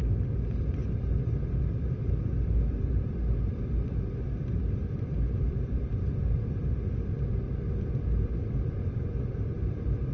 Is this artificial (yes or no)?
yes